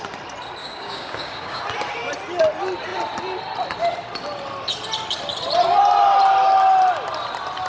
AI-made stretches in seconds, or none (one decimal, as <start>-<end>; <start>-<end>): 0.6-1.6